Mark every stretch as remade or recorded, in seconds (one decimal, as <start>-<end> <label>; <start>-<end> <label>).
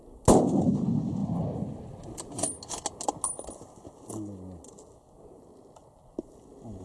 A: 0.0-6.8 recorded